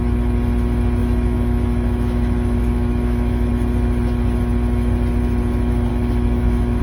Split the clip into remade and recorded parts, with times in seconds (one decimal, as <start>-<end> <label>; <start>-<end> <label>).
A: 0.0-1.0 recorded; 1.0-3.5 remade; 3.5-5.9 recorded; 5.9-6.8 remade

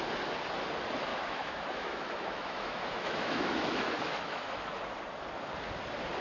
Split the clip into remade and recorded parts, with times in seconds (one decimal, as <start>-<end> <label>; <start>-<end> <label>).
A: 0.0-1.1 recorded; 1.1-4.8 remade; 4.8-6.2 recorded

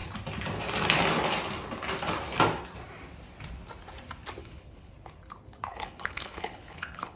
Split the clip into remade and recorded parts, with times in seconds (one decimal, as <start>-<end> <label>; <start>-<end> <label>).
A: 0.0-4.4 recorded; 4.4-4.9 remade; 4.9-5.7 recorded; 5.7-7.2 remade

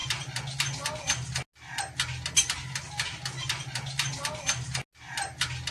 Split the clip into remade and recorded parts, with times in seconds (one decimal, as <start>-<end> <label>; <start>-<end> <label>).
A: 0.0-5.7 recorded

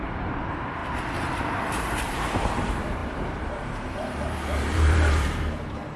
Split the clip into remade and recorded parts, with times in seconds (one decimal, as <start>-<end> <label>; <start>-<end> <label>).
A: 0.0-0.8 remade; 0.8-1.4 recorded; 1.4-6.0 remade